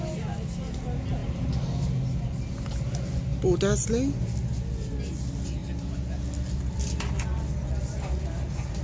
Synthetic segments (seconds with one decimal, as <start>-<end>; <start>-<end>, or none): none